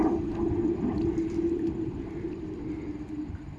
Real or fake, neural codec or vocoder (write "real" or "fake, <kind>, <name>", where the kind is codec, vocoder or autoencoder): fake, vocoder, BigVGAN v2